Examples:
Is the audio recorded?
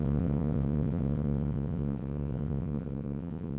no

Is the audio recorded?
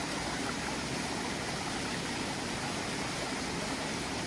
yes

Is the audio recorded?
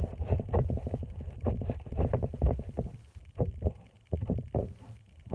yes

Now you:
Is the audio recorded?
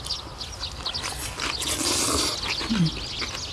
yes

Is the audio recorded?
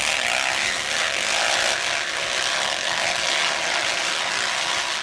yes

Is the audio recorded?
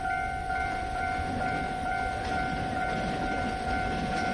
no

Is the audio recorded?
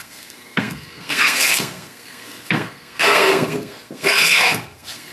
no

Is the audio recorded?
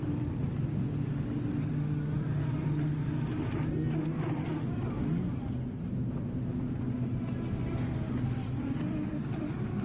yes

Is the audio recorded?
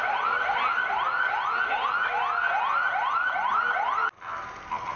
yes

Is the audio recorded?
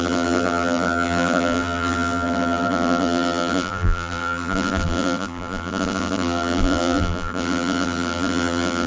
no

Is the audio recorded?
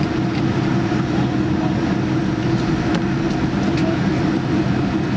yes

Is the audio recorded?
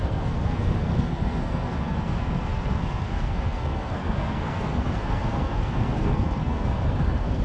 no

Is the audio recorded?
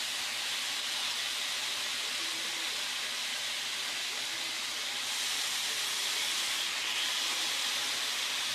yes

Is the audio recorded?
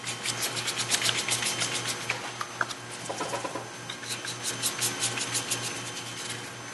yes